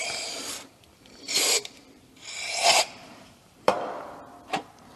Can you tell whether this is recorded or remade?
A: remade